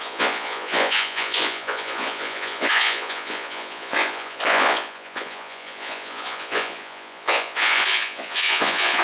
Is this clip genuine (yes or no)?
no